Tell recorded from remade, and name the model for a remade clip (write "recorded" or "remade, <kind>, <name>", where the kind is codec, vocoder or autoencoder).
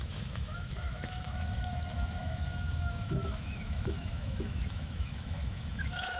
remade, autoencoder, DAC-VAE